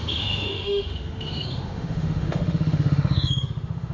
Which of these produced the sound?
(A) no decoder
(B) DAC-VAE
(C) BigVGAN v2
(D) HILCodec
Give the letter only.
B